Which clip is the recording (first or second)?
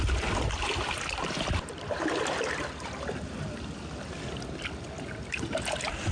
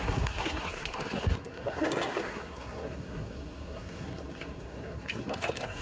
first